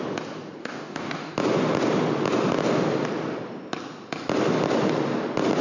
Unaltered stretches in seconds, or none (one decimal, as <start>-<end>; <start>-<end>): 0.0-0.6; 1.3-5.6